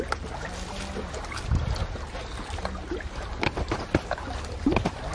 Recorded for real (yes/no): yes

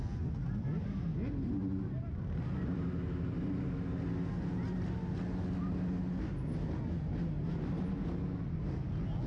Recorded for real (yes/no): yes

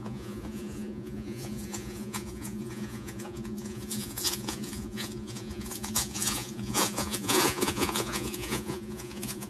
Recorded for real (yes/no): no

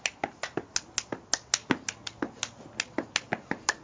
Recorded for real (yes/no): yes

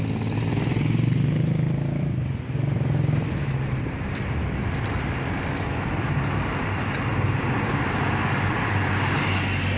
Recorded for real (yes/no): yes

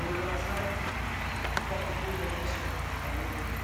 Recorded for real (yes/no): yes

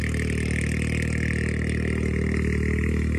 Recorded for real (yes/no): yes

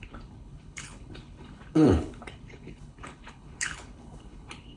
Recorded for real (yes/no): no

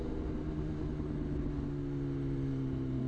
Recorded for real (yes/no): yes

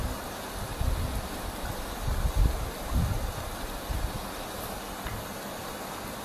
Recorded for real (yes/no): yes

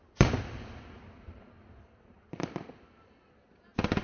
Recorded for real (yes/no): no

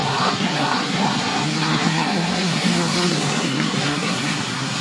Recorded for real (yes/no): no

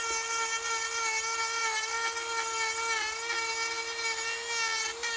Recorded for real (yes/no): yes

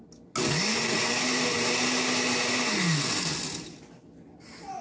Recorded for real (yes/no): yes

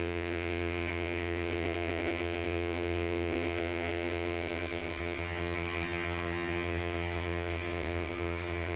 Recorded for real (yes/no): no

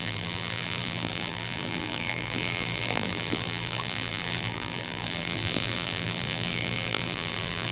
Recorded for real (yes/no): no